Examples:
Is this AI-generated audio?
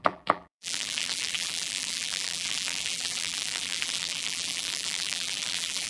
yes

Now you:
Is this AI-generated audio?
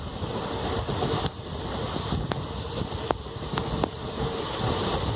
no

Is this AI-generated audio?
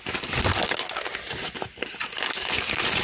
no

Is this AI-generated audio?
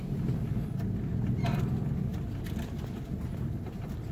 no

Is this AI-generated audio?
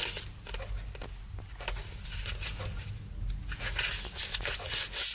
no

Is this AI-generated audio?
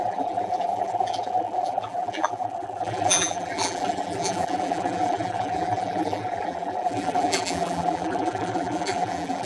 yes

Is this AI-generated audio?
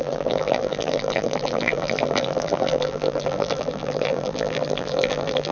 yes